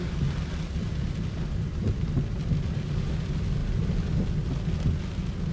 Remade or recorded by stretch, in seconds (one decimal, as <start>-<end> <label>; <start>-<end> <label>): 0.0-3.6 remade; 3.6-5.0 recorded; 5.0-5.5 remade